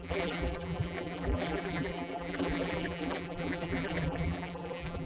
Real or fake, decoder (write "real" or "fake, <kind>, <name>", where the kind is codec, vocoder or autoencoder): fake, vocoder, BigVGAN v2